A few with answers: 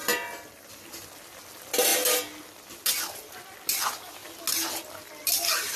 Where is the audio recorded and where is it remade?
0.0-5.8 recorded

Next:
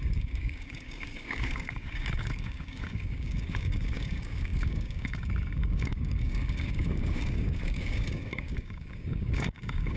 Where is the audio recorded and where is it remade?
0.0-10.0 remade

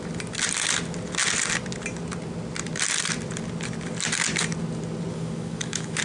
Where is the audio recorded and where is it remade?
0.0-5.1 recorded; 5.1-6.0 remade

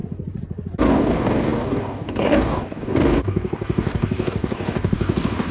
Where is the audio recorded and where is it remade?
0.0-0.9 recorded; 0.9-5.5 remade

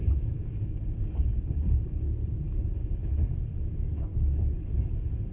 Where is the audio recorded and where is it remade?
0.0-3.0 remade; 3.0-4.1 recorded; 4.1-4.7 remade; 4.7-5.3 recorded